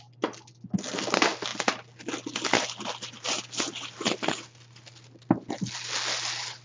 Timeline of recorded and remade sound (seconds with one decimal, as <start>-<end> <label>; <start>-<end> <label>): 0.0-6.6 recorded